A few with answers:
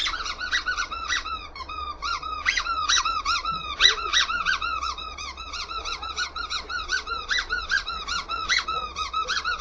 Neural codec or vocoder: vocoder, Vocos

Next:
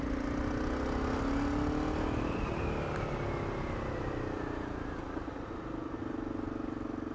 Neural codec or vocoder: none